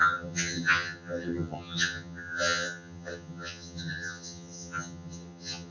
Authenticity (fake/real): fake